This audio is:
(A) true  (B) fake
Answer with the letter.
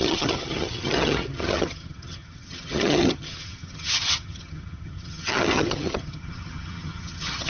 B